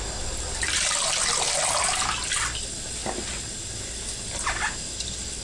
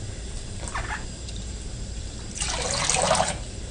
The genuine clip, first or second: first